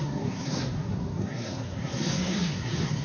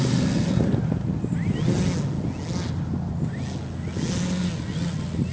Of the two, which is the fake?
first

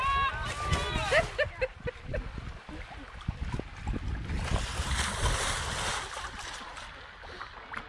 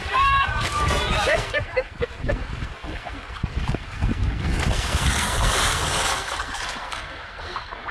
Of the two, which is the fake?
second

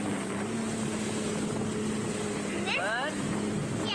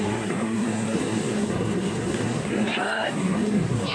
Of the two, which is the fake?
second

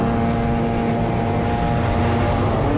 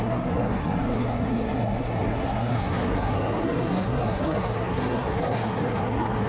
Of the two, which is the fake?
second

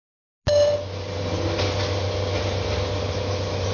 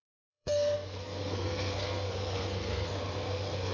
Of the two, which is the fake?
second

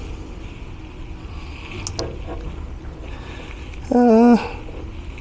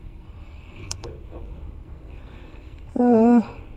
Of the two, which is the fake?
second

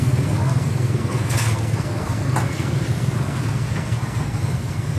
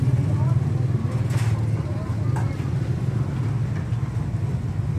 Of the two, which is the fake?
first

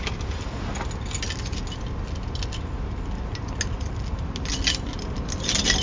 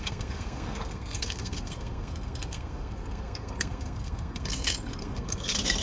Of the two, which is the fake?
second